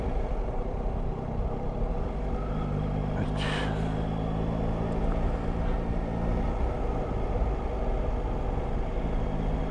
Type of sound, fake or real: real